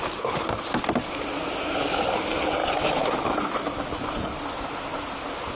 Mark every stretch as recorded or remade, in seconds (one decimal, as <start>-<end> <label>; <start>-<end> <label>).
0.0-2.6 recorded; 2.6-3.4 remade; 3.4-5.5 recorded